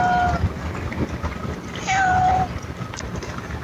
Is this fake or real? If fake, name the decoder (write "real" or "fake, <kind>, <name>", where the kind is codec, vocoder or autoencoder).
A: real